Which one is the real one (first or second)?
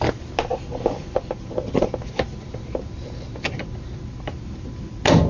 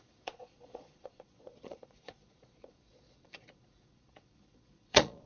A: first